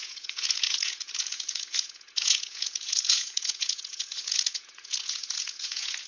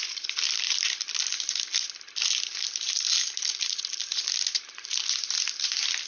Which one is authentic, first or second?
second